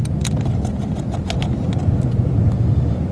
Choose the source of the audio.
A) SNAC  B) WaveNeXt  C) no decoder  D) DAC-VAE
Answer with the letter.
C